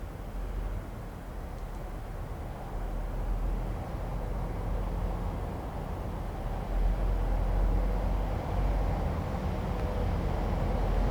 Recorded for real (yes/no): yes